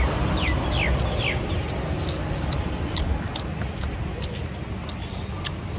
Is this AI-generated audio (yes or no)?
no